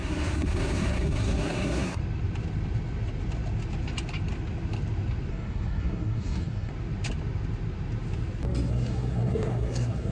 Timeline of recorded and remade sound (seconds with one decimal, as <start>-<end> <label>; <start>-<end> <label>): 0.0-2.0 remade; 2.0-5.3 recorded; 5.3-6.7 remade; 6.7-8.7 recorded; 8.7-10.1 remade